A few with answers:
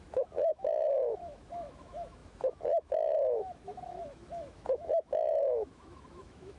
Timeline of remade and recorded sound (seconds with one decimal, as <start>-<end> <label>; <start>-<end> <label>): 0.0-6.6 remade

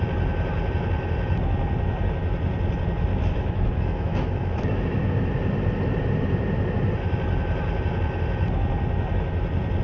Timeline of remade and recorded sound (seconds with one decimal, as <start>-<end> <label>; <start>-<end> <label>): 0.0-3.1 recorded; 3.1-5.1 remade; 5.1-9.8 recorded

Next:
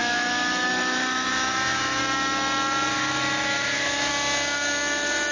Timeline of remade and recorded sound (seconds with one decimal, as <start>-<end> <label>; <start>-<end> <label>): 0.0-2.0 remade; 2.0-2.9 recorded; 2.9-4.1 remade; 4.1-5.3 recorded